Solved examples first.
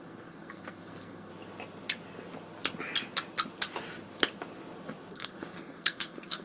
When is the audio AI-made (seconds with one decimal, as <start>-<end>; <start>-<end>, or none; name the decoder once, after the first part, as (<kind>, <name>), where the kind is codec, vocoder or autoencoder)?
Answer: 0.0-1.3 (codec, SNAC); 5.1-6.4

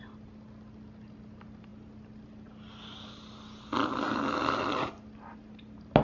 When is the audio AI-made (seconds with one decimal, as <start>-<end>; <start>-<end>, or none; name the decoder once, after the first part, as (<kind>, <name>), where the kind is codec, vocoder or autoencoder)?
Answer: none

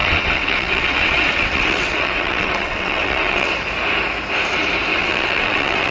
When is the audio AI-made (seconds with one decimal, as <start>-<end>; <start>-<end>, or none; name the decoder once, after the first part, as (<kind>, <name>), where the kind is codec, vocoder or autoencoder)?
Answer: 0.0-3.5 (vocoder, WaveNeXt); 4.9-5.9

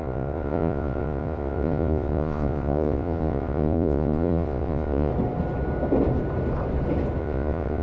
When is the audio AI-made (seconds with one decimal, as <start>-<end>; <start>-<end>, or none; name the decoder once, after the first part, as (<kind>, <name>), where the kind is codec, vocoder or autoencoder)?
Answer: 0.0-5.1 (vocoder, Vocos); 7.2-7.8

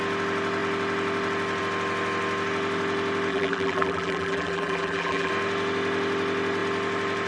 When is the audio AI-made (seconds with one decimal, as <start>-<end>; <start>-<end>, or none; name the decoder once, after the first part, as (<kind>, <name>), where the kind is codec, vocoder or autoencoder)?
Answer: 3.3-5.3 (vocoder, BigVGAN v2)

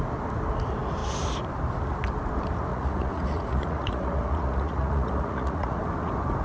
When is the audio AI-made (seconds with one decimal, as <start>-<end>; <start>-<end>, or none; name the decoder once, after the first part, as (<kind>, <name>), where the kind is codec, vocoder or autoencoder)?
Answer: 2.7-5.8 (vocoder, Vocos)